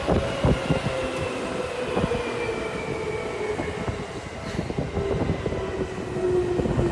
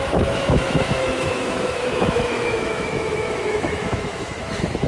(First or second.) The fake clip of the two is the second